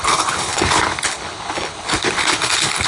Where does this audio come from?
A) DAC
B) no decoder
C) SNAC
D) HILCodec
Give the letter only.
D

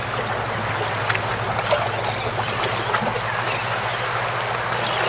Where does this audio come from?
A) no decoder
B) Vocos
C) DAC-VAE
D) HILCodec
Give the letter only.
A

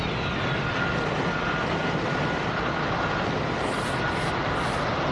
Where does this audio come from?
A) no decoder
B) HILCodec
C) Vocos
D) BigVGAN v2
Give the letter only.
A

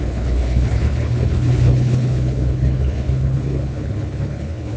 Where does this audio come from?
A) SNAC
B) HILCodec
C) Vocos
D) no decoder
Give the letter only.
B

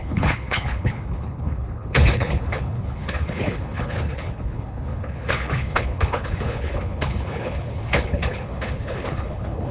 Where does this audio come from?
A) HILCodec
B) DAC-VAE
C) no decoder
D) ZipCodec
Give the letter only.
A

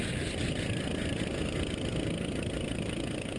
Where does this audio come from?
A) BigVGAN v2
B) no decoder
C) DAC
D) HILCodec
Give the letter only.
B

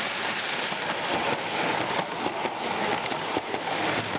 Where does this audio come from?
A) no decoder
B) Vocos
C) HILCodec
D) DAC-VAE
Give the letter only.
A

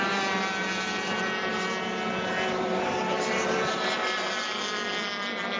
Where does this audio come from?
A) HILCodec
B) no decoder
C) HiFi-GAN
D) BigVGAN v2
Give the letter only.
B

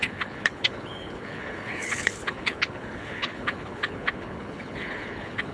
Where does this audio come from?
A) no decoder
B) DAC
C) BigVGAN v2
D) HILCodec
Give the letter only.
D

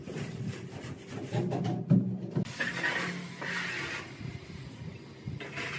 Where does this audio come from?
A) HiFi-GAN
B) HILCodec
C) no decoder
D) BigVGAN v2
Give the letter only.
C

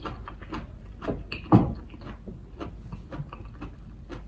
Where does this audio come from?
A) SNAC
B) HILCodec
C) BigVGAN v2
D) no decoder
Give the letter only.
D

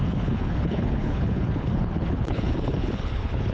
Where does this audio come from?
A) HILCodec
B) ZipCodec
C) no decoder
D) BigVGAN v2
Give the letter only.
A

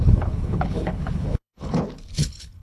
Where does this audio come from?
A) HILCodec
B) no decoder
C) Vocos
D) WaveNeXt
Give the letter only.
A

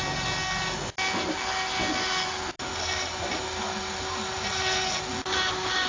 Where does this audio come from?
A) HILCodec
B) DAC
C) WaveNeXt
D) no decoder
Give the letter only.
D